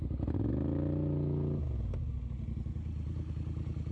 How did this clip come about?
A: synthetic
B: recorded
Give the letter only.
B